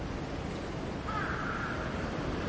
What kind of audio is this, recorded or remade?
recorded